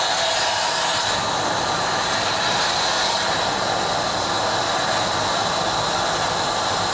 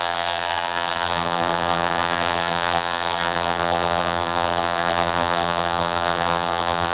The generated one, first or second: second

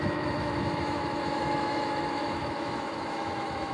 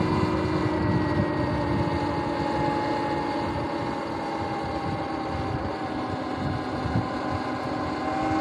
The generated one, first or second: first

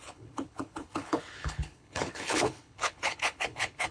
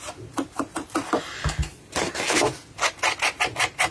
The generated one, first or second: first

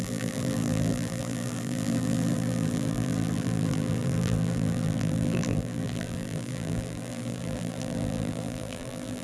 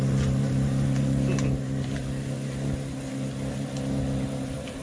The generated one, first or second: first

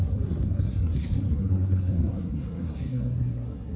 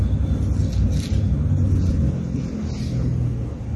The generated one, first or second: first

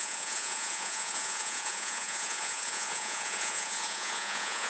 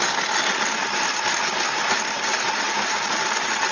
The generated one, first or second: first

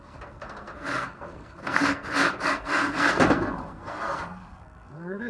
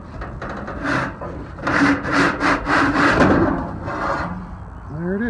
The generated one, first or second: first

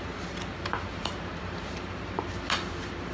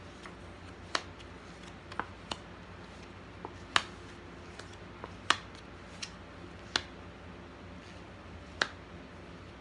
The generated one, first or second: first